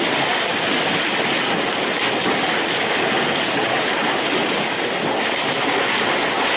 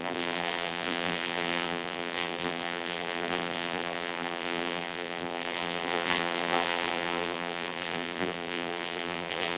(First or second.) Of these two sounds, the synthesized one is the second